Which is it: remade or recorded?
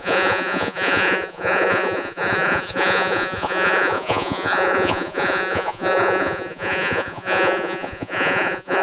remade